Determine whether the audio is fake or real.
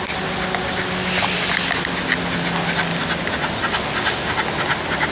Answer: real